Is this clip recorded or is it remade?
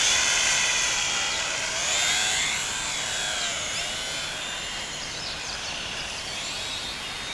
remade